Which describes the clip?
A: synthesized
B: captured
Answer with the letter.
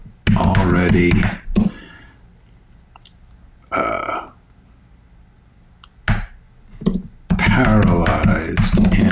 B